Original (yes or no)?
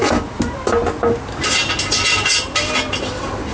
yes